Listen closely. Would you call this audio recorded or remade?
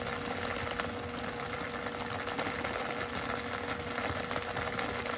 recorded